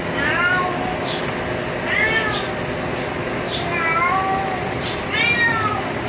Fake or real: real